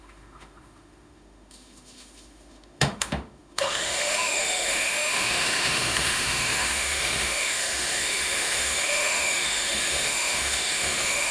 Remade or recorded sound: remade